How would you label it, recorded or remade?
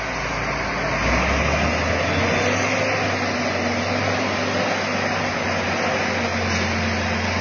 recorded